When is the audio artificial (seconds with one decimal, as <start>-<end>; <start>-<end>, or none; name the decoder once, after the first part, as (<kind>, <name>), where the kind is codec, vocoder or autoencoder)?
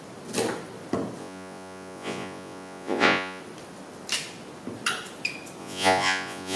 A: 1.2-3.4 (vocoder, Vocos); 5.6-6.6